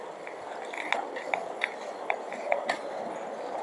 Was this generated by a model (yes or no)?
no